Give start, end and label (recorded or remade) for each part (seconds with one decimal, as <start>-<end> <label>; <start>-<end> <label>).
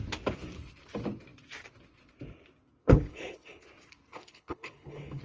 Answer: 0.0-2.8 recorded; 2.8-3.6 remade; 3.6-4.1 recorded; 4.1-5.2 remade